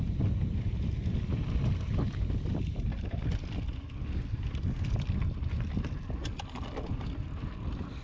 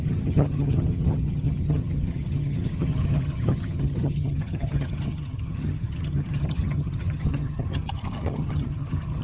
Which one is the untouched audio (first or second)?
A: first